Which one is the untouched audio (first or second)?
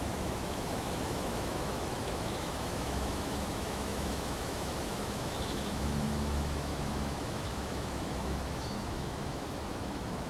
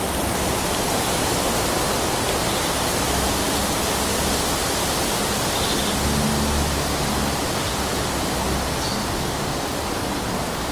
second